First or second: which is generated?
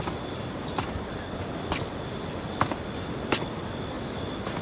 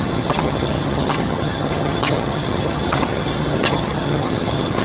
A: second